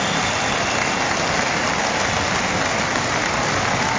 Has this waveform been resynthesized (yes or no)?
no